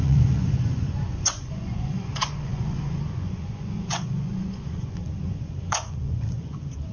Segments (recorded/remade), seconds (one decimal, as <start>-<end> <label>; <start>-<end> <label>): 0.0-6.9 remade